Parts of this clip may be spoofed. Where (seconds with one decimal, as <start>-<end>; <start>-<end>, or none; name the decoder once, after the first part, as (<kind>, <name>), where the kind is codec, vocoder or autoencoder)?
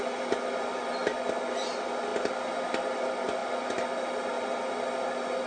none